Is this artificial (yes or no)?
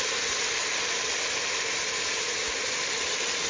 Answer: no